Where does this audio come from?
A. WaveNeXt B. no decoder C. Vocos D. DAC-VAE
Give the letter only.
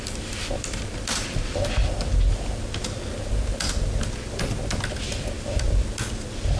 B